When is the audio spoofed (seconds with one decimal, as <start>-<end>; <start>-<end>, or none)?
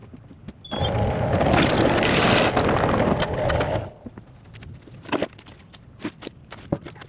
none